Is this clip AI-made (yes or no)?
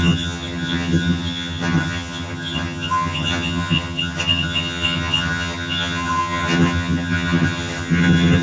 yes